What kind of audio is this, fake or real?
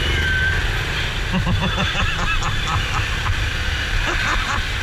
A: real